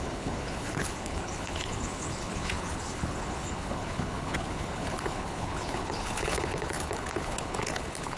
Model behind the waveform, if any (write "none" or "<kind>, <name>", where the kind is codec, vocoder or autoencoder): codec, HILCodec